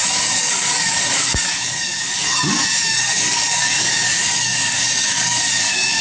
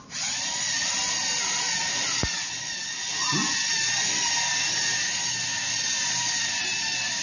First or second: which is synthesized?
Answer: first